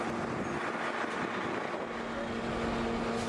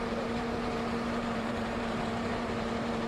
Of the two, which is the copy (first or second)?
second